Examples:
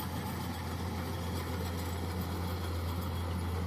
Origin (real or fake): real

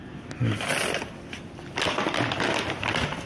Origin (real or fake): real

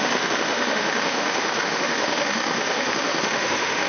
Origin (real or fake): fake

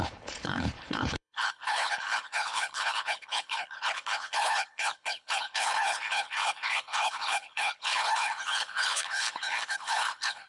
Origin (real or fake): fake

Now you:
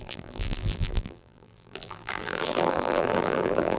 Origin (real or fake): fake